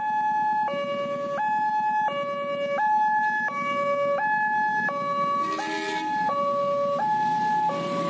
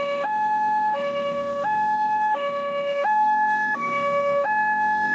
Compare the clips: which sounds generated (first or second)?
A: second